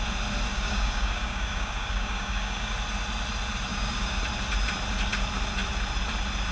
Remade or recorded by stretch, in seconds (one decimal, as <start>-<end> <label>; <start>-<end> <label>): 0.0-0.5 recorded; 0.5-2.7 remade; 2.7-3.7 recorded; 3.7-4.2 remade; 4.2-6.5 recorded